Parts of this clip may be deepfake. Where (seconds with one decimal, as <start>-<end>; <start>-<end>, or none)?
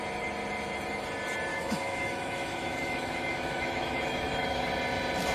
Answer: 1.5-4.7